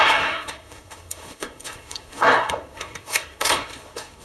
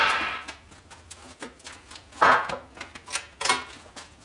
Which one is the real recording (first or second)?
second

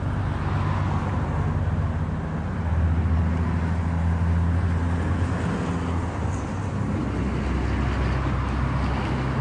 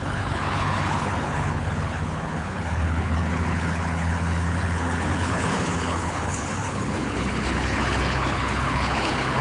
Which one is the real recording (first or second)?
first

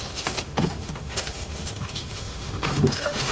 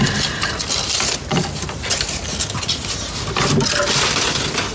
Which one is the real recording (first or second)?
second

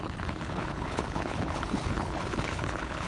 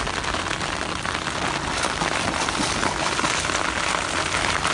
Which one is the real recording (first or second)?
second